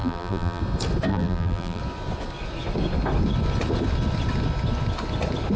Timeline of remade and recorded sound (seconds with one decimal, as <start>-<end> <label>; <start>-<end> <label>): 0.0-0.6 remade; 0.6-1.1 recorded; 1.1-1.8 remade; 1.8-5.6 recorded